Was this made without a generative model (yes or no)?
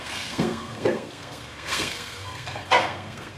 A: no